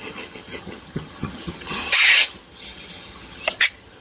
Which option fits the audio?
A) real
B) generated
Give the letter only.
B